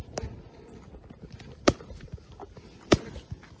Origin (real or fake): real